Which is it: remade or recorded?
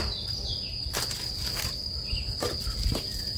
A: recorded